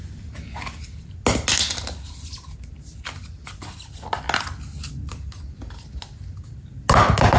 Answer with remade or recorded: recorded